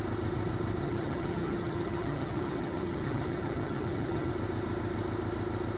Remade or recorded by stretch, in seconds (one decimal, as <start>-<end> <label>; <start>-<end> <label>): 0.0-0.8 recorded; 0.8-4.3 remade; 4.3-5.8 recorded